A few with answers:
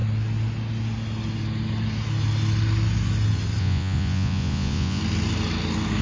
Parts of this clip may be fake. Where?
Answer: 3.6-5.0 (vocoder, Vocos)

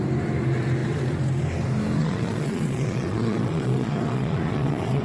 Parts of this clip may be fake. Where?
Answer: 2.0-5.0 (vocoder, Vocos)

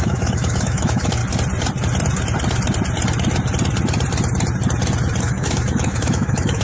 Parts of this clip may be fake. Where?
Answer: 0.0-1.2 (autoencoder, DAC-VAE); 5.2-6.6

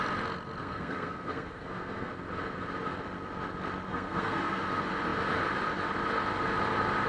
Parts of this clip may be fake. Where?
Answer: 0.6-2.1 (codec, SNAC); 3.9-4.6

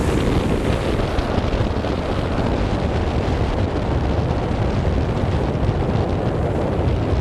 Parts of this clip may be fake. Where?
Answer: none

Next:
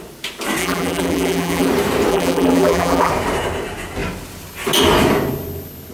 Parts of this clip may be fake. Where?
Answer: 0.6-1.7 (vocoder, BigVGAN v2); 2.1-3.1

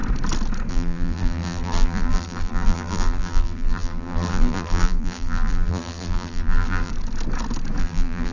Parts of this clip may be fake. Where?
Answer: 0.7-6.9 (vocoder, BigVGAN v2); 7.8-8.3

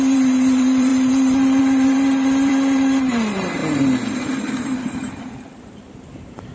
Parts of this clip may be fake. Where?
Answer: 0.0-3.6 (vocoder, BigVGAN v2); 4.6-6.5